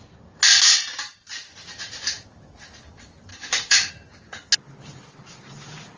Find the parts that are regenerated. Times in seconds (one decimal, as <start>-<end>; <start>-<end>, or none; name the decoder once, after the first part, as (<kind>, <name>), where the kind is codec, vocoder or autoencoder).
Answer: 3.3-3.9 (autoencoder, DAC-VAE)